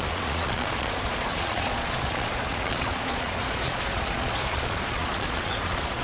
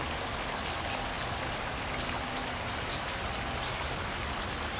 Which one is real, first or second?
second